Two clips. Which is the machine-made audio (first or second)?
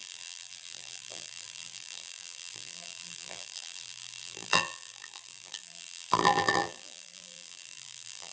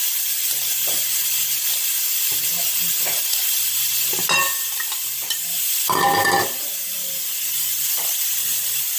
first